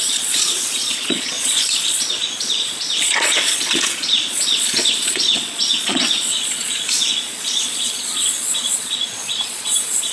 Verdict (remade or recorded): remade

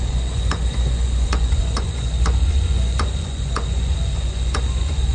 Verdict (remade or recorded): remade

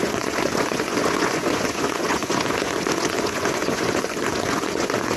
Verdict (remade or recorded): remade